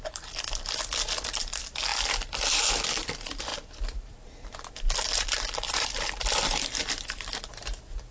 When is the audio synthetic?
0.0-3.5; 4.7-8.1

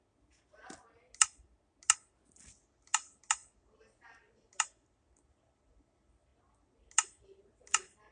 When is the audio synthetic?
none

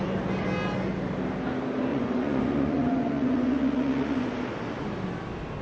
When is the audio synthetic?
1.9-4.3

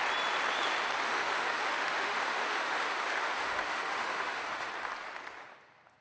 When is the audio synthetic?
1.1-4.7

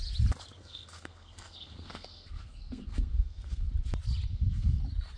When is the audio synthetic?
0.6-3.7; 4.3-4.8

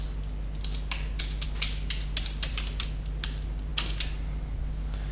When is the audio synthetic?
none

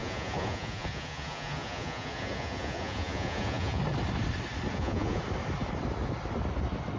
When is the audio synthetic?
0.0-3.8; 4.7-5.2

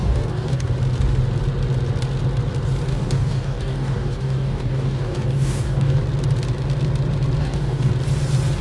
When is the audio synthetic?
0.0-0.7; 2.9-6.0; 7.4-7.9